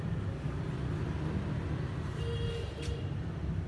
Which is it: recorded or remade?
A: recorded